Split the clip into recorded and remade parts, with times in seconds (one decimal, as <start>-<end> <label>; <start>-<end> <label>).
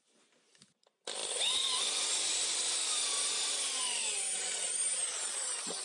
0.0-5.8 recorded